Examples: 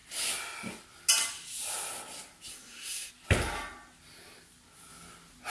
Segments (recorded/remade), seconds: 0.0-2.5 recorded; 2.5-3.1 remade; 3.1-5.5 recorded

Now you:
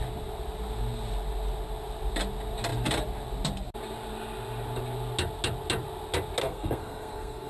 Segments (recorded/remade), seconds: 0.0-6.4 recorded; 6.4-7.5 remade

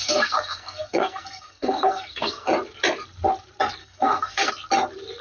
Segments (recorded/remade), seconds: 0.0-2.5 remade; 2.5-3.8 recorded; 3.8-4.5 remade; 4.5-5.2 recorded

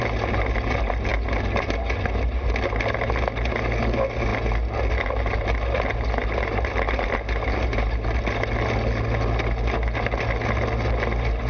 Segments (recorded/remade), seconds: 0.0-11.5 recorded

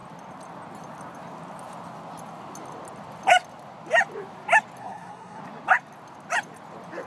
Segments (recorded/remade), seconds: 0.0-4.8 recorded; 4.8-5.4 remade; 5.4-7.1 recorded